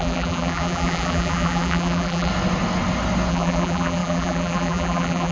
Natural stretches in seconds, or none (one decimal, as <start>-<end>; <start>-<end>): 2.3-3.3